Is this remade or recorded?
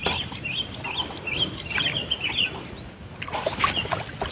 recorded